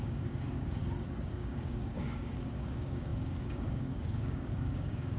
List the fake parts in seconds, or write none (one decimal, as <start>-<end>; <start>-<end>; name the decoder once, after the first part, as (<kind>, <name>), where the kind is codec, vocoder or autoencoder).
0.0-0.8 (codec, DAC); 1.3-5.2